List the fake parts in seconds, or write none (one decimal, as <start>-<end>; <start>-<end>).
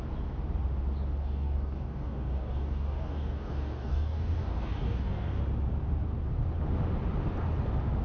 1.2-5.4